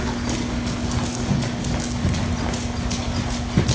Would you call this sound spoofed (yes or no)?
no